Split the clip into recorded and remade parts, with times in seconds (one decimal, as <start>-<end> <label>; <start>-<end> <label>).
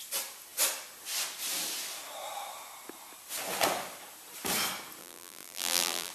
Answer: 0.0-5.0 recorded; 5.0-6.1 remade